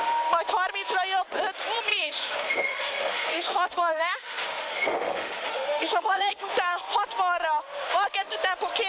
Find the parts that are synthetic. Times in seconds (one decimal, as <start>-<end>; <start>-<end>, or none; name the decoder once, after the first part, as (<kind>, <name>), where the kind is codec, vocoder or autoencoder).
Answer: 1.9-6.5 (autoencoder, DAC-VAE)